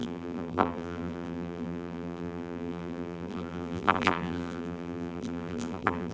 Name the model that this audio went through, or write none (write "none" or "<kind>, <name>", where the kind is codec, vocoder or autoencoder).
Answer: vocoder, BigVGAN v2